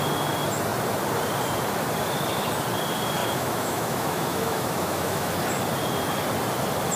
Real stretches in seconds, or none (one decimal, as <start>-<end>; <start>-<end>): 0.0-3.2; 5.3-7.0